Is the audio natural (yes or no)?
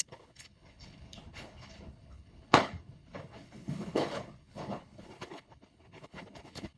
no